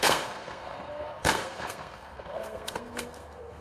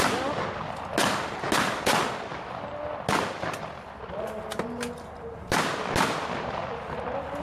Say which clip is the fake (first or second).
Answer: first